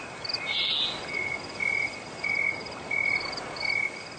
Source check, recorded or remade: recorded